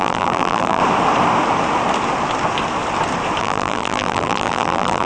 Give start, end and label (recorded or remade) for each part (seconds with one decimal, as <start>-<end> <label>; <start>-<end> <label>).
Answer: 0.0-0.8 remade; 0.8-3.4 recorded; 3.4-5.1 remade